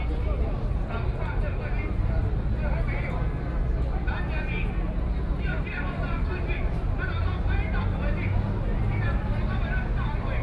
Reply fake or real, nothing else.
real